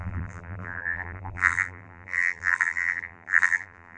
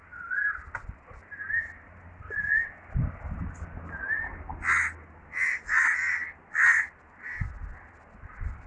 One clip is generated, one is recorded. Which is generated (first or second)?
first